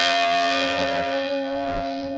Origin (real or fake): fake